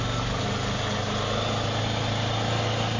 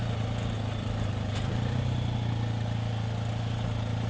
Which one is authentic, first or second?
first